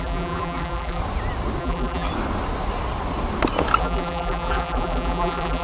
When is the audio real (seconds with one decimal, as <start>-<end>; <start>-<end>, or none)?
1.0-1.6; 2.1-3.8